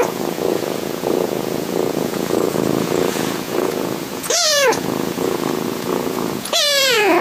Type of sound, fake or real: fake